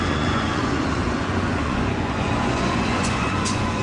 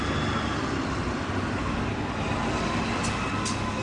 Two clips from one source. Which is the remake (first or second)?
first